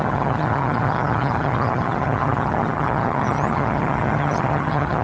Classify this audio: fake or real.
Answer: fake